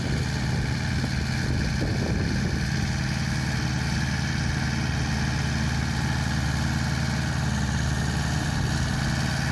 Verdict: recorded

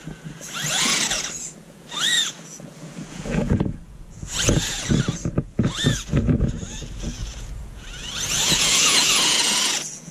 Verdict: remade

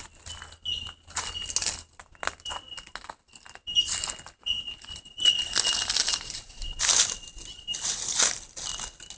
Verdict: recorded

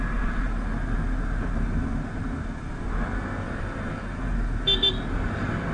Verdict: recorded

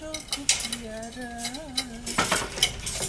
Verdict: recorded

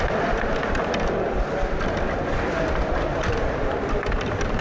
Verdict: recorded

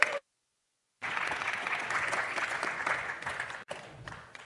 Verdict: remade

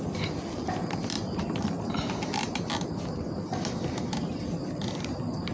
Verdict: recorded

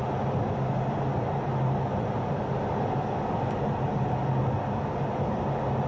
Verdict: recorded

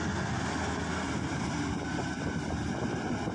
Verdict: recorded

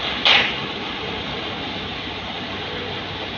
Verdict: recorded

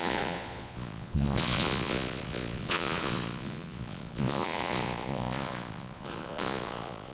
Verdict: remade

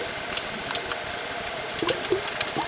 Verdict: recorded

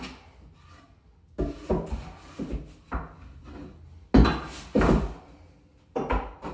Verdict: recorded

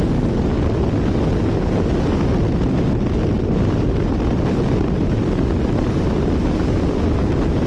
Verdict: recorded